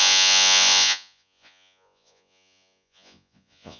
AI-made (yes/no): yes